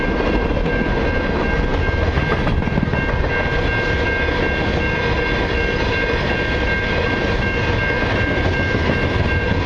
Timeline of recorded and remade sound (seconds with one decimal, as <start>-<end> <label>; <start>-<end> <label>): 0.0-9.7 recorded